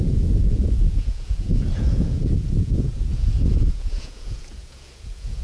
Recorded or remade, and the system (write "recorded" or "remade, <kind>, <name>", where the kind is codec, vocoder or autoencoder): remade, vocoder, Vocos